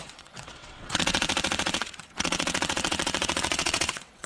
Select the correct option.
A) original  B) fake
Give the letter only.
B